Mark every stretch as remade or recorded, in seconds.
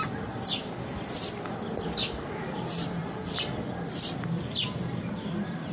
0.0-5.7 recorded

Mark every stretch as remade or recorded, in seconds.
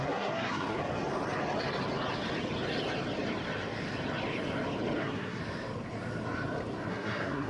0.0-0.8 remade; 0.8-5.0 recorded; 5.0-5.4 remade; 5.4-6.9 recorded; 6.9-7.5 remade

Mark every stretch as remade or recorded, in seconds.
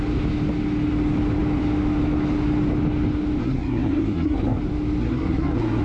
0.0-3.4 recorded; 3.4-4.6 remade; 4.6-5.0 recorded; 5.0-5.8 remade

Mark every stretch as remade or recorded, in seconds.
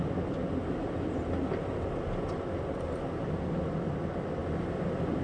0.0-5.2 recorded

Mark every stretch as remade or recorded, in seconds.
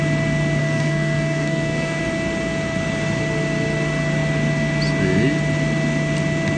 0.0-0.6 recorded; 0.6-2.0 remade; 2.0-6.6 recorded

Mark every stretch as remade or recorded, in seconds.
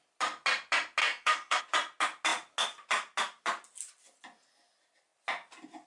0.0-1.0 recorded; 1.0-1.6 remade; 1.6-5.9 recorded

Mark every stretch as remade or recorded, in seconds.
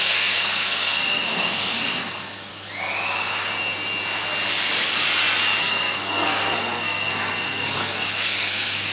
0.0-2.5 remade; 2.5-5.6 recorded; 5.6-8.9 remade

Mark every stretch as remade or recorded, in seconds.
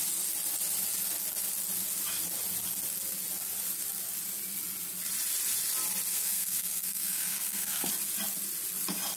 0.0-6.1 recorded; 6.1-7.9 remade; 7.9-9.2 recorded